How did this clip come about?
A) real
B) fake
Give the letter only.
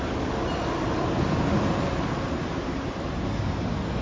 A